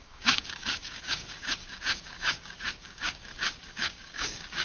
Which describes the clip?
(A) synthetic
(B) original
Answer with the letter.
A